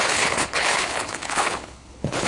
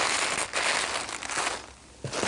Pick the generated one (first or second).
first